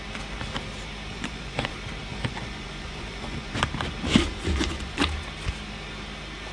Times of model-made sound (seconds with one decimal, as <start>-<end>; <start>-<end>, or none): 1.1-1.7; 2.1-3.5; 4.3-5.0